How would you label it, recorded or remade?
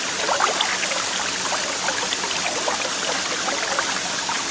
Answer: recorded